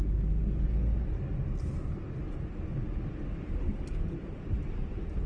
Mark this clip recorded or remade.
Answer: recorded